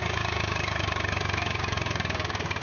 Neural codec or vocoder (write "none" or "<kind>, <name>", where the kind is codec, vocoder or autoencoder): codec, DAC